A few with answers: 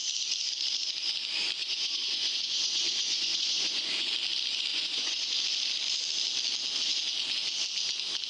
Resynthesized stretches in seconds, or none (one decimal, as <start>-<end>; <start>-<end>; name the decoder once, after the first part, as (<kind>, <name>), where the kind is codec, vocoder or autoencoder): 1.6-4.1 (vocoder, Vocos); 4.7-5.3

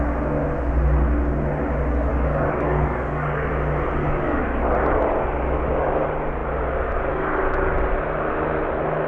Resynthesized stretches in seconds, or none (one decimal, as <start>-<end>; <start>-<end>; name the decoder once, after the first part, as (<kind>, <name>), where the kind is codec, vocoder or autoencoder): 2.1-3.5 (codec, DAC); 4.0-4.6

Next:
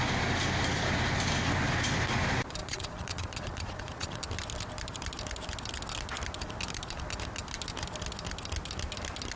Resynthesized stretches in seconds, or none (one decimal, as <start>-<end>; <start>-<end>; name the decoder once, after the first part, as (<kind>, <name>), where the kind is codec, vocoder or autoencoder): 2.6-4.2 (vocoder, Vocos)